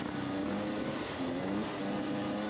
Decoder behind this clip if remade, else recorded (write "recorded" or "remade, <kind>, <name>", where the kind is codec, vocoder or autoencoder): recorded